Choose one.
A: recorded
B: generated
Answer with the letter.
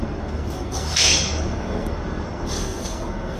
B